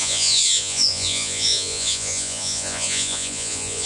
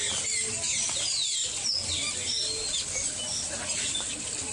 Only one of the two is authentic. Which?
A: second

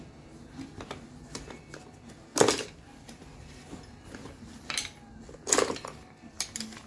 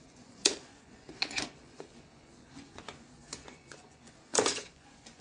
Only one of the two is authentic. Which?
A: first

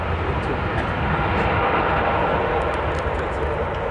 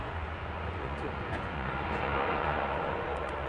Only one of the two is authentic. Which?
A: first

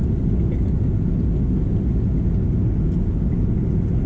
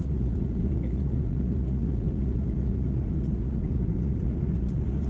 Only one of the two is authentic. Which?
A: first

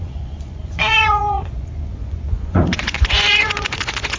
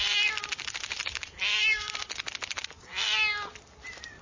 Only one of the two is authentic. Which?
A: second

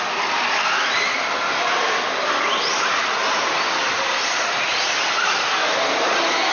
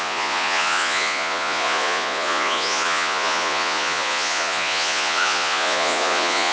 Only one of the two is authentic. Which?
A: first